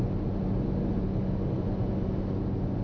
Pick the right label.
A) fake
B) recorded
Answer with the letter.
B